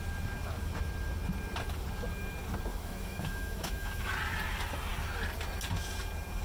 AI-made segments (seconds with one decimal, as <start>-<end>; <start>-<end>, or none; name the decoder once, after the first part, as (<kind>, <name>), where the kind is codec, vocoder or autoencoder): 2.7-4.1 (autoencoder, DAC-VAE)

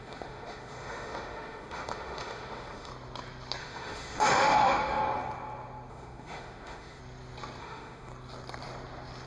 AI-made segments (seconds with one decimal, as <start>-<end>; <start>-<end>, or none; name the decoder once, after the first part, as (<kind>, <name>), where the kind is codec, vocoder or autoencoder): 0.0-2.9 (autoencoder, DAC-VAE); 3.6-5.0; 5.9-7.0; 7.6-8.1

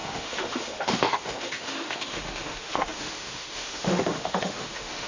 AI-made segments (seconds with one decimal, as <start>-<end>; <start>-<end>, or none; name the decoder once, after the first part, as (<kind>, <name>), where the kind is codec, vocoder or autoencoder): 0.0-5.1 (autoencoder, DAC-VAE)